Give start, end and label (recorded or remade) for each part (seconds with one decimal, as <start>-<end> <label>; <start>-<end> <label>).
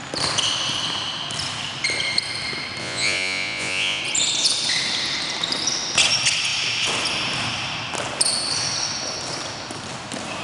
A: 0.0-2.8 recorded; 2.8-4.0 remade; 4.0-10.4 recorded